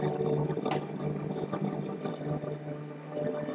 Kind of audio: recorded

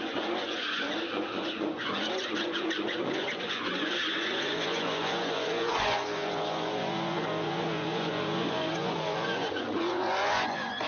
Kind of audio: remade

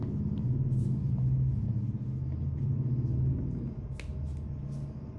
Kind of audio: recorded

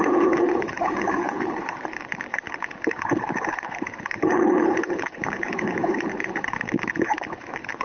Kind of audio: remade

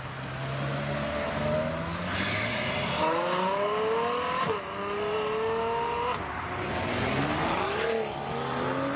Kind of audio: recorded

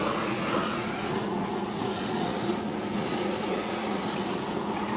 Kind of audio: remade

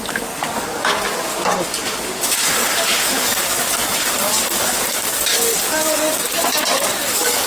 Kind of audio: remade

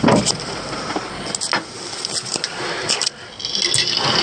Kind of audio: recorded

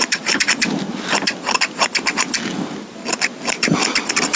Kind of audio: recorded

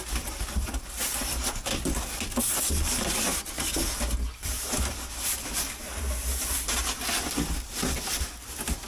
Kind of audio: recorded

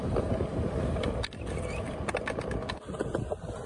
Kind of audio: recorded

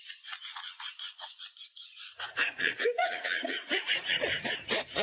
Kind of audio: remade